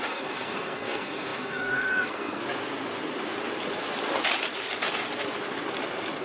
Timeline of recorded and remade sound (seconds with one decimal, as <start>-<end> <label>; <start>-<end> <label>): 0.0-2.4 remade; 2.4-6.2 recorded